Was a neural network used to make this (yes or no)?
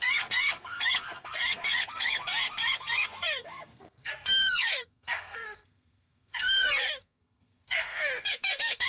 yes